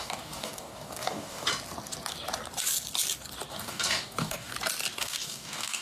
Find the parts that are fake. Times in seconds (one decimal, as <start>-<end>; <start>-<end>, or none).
0.0-1.5; 3.5-4.5; 5.0-5.8

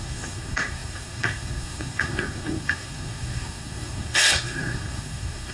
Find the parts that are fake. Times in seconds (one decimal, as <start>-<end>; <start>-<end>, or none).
0.0-5.5